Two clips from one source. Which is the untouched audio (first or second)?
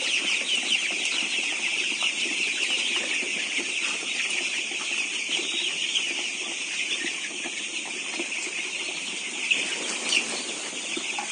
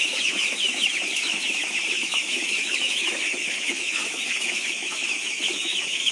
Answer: first